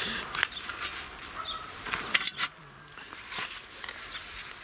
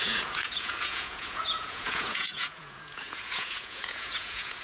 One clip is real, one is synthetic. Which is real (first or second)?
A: first